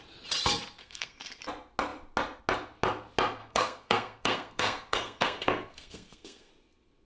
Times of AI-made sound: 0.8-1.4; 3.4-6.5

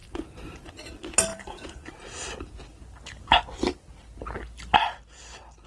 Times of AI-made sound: 0.0-0.7; 1.3-1.9

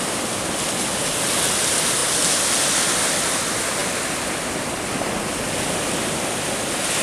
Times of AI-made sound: 3.8-5.0

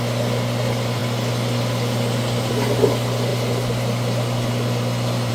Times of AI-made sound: none

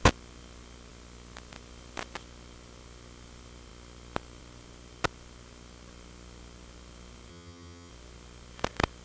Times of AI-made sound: 7.3-7.9

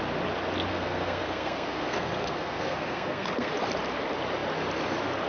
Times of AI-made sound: 0.7-3.5